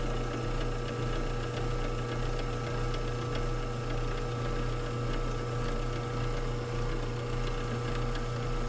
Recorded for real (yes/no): yes